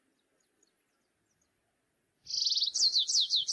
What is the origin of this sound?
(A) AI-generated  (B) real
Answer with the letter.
B